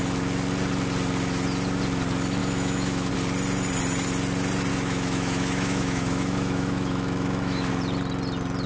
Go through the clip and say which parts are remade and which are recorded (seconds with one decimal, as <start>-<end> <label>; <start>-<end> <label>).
0.0-2.4 recorded; 2.4-3.1 remade; 3.1-4.7 recorded; 4.7-7.7 remade; 7.7-8.7 recorded

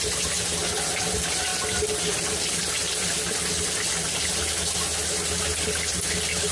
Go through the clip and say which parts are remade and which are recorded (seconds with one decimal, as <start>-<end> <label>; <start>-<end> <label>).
0.0-6.5 recorded

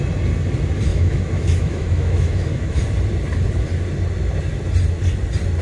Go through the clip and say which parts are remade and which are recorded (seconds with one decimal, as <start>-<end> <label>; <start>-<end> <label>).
0.0-0.9 recorded; 0.9-2.8 remade; 2.8-5.6 recorded

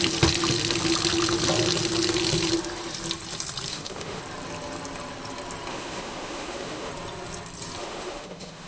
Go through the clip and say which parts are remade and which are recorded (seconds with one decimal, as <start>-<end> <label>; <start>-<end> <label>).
0.0-3.7 recorded; 3.7-4.2 remade; 4.2-5.7 recorded; 5.7-6.9 remade; 6.9-7.8 recorded; 7.8-8.7 remade

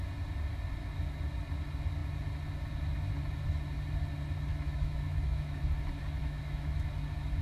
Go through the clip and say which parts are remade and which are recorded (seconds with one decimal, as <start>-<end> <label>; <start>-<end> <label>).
0.0-4.5 recorded; 4.5-5.6 remade; 5.6-6.2 recorded; 6.2-6.9 remade; 6.9-7.4 recorded